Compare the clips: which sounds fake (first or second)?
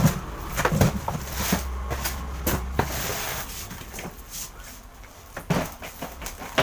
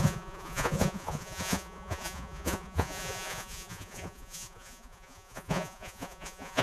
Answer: second